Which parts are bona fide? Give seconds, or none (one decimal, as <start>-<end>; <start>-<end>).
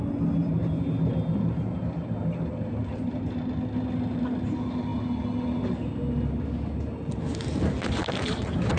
0.0-0.4; 3.4-8.8